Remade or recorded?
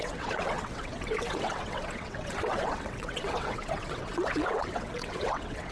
remade